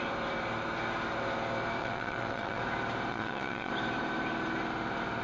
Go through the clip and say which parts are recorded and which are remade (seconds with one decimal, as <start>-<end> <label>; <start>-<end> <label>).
0.0-1.8 recorded; 1.8-2.6 remade; 2.6-3.1 recorded; 3.1-3.7 remade; 3.7-5.2 recorded